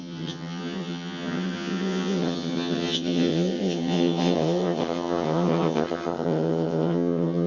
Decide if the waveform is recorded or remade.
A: remade